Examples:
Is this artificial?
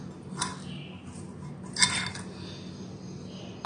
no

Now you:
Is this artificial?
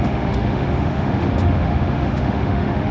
yes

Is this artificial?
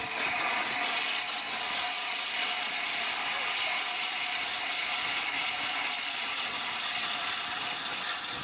no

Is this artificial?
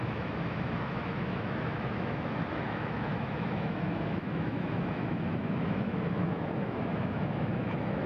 yes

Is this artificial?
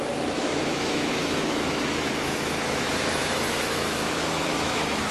yes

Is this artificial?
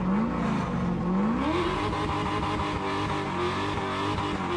no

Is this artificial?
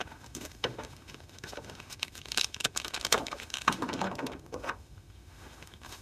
yes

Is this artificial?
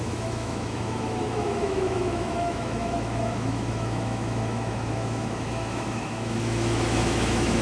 yes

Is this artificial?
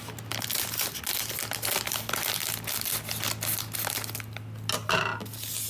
no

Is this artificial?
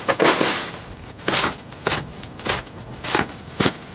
no